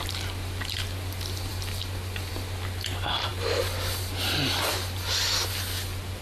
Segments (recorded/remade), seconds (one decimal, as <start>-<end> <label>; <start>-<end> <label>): 0.0-6.2 recorded